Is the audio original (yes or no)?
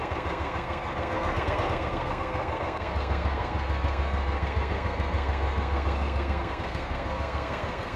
no